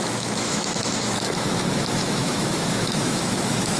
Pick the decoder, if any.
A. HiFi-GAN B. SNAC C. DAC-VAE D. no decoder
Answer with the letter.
C